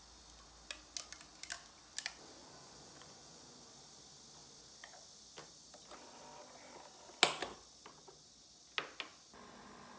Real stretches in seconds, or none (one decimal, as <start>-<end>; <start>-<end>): 0.0-2.4; 3.7-10.0